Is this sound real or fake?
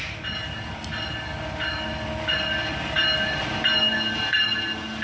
real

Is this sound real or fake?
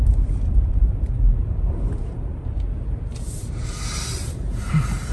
fake